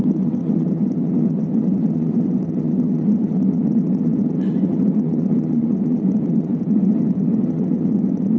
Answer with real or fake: fake